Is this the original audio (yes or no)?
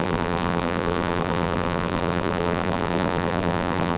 no